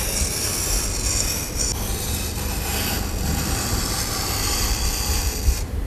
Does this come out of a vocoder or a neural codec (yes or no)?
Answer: no